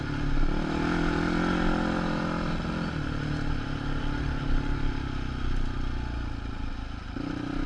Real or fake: real